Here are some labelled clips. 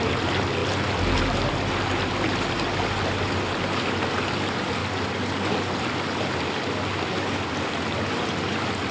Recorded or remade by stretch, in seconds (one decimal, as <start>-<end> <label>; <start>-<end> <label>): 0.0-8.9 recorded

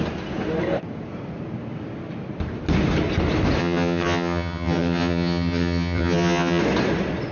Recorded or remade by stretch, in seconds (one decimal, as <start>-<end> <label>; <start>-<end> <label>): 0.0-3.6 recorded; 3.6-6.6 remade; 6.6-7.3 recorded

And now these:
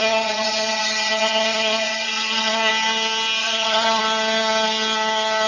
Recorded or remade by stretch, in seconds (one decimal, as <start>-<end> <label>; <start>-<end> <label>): 0.0-2.7 remade; 2.7-3.4 recorded; 3.4-4.0 remade; 4.0-5.5 recorded